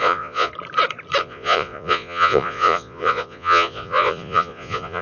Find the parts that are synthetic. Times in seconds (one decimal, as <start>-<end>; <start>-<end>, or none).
0.0-0.5; 1.2-5.0